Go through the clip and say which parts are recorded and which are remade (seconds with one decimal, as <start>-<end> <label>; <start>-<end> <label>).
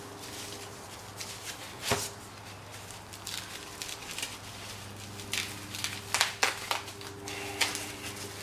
0.0-8.4 recorded